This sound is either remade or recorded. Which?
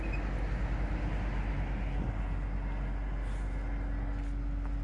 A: recorded